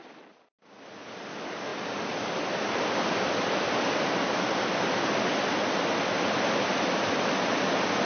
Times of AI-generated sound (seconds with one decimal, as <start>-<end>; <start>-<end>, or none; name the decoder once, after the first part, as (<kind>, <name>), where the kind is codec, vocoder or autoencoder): 1.7-5.0 (vocoder, BigVGAN v2)